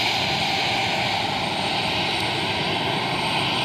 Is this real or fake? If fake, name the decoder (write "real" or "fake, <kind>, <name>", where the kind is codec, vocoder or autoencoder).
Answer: real